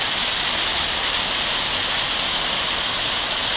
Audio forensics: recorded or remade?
recorded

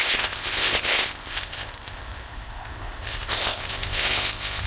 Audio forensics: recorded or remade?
remade